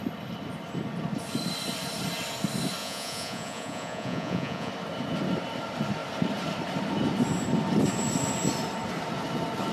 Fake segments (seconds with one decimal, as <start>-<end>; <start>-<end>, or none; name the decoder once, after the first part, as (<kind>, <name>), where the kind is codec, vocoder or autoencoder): 2.8-4.7 (vocoder, Vocos)